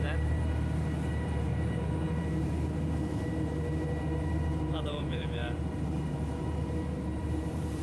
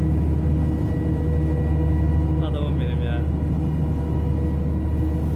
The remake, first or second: first